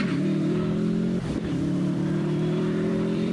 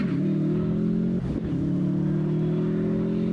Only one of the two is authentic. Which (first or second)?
second